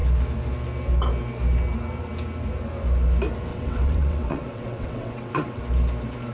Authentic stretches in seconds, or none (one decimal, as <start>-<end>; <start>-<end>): 0.0-3.5; 5.6-6.3